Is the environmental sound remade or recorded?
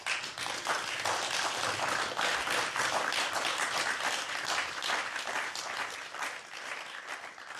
recorded